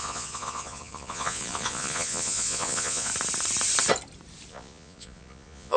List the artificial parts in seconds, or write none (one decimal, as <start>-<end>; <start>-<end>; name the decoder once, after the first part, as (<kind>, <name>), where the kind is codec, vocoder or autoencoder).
0.0-3.1 (vocoder, Vocos); 4.5-5.8